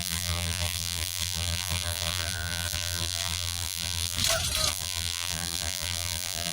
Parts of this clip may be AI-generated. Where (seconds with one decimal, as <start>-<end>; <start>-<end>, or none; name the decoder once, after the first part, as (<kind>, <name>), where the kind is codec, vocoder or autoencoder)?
0.0-4.2 (vocoder, BigVGAN v2); 4.7-6.5